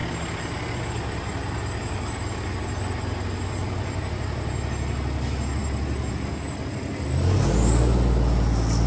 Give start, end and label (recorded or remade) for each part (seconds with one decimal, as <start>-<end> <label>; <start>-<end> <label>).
0.0-8.9 recorded